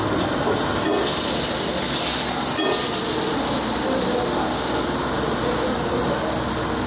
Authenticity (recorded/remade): recorded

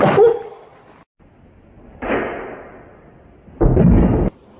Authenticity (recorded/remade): recorded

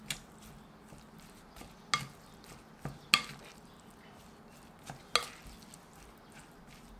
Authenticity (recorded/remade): recorded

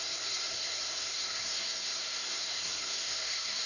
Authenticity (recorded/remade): remade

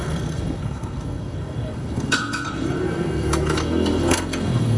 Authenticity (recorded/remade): remade